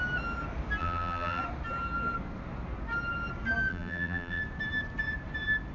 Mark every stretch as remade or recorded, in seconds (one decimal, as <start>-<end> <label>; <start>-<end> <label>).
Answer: 0.0-0.8 recorded; 0.8-1.4 remade; 1.4-3.7 recorded; 3.7-4.4 remade; 4.4-5.7 recorded